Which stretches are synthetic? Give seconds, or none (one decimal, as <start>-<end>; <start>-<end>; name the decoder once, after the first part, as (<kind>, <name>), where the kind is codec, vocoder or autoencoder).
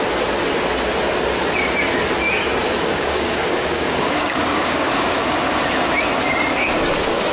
2.9-5.2 (codec, DAC)